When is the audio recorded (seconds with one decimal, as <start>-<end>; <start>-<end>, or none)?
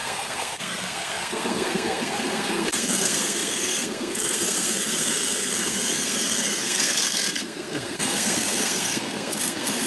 none